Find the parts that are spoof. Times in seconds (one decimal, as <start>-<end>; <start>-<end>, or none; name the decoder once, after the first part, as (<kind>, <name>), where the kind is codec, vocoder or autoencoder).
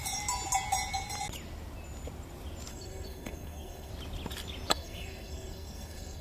2.7-3.9 (codec, SNAC); 4.7-6.2